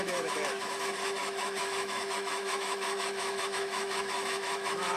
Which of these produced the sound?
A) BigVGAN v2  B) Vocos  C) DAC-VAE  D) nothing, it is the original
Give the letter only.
C